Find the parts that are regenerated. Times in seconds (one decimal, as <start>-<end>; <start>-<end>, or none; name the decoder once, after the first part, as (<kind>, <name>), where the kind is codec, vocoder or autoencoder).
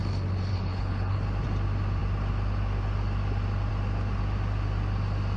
0.5-1.2 (codec, HILCodec)